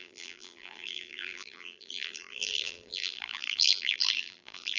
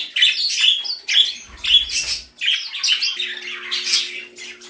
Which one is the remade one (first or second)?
first